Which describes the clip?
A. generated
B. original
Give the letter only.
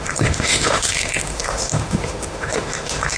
A